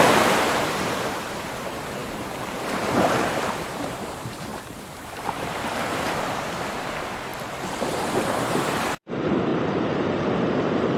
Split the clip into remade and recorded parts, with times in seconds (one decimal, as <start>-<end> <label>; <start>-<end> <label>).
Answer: 0.0-7.3 remade; 7.3-8.2 recorded; 8.2-11.0 remade